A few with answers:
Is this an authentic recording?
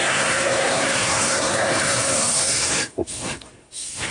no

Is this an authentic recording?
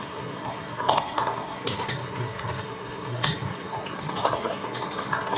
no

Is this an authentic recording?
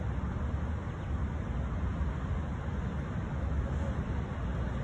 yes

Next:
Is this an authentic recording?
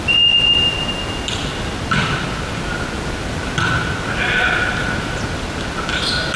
yes